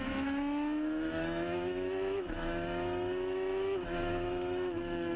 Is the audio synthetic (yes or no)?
yes